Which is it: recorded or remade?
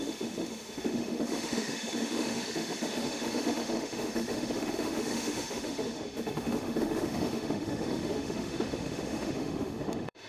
remade